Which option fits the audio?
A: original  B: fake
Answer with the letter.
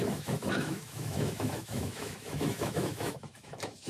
B